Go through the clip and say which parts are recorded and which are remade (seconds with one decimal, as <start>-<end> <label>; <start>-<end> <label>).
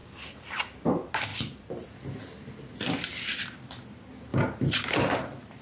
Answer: 0.0-0.9 remade; 0.9-1.3 recorded; 1.3-3.7 remade; 3.7-5.6 recorded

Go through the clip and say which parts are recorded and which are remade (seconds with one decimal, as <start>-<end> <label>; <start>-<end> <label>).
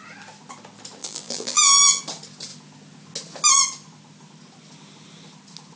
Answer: 0.0-1.0 recorded; 1.0-2.0 remade; 2.0-5.8 recorded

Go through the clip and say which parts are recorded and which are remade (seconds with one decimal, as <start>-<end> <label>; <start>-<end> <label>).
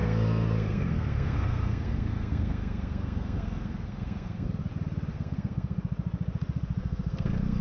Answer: 0.0-4.6 remade; 4.6-5.1 recorded; 5.1-5.8 remade; 5.8-6.8 recorded; 6.8-7.6 remade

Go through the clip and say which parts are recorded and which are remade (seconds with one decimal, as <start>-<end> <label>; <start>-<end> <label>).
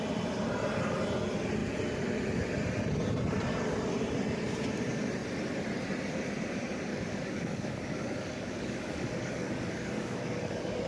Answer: 0.0-6.9 recorded; 6.9-10.9 remade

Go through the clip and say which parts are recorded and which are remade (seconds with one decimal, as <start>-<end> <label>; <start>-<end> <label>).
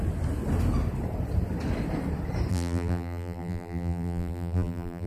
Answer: 0.0-2.5 recorded; 2.5-5.1 remade